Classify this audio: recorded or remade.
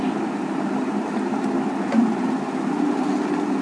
recorded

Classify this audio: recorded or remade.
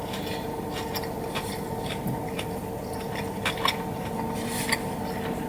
recorded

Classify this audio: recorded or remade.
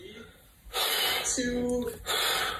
recorded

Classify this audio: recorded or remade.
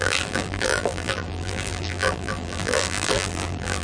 remade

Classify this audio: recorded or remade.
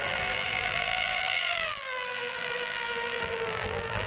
remade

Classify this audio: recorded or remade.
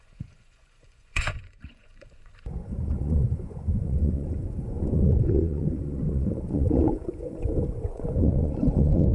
remade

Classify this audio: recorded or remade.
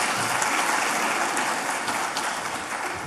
recorded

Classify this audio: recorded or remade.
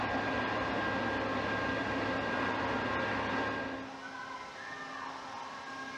recorded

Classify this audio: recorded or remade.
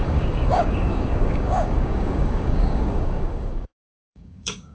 remade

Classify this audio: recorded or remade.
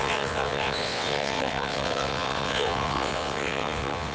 remade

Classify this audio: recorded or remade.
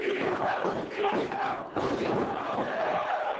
remade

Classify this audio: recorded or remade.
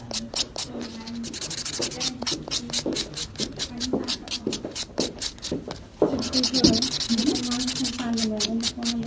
recorded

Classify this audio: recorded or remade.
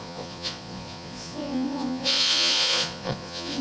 remade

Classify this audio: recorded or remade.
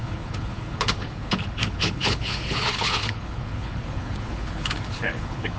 remade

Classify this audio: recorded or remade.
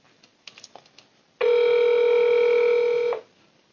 recorded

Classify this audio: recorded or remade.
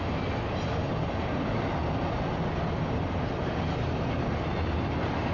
recorded